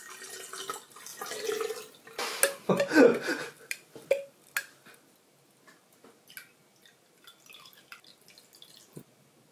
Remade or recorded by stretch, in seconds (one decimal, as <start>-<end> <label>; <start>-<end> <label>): 0.0-9.5 recorded

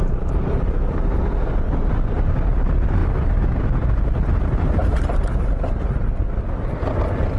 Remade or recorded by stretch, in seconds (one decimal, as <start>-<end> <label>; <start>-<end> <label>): 0.0-4.8 recorded; 4.8-5.9 remade; 5.9-7.4 recorded

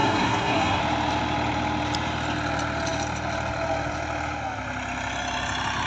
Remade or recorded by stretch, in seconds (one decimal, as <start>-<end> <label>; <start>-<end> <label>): 0.0-0.8 remade; 0.8-5.9 recorded